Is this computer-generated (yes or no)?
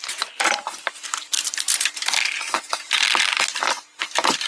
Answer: no